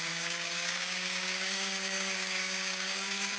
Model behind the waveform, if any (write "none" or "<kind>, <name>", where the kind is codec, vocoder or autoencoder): codec, DAC